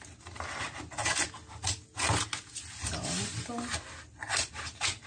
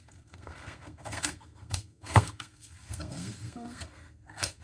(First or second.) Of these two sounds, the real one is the first